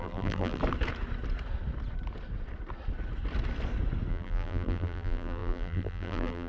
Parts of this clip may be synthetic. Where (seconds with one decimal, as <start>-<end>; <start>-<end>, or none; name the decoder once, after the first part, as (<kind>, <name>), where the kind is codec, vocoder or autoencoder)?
0.0-0.6 (vocoder, BigVGAN v2); 4.1-6.5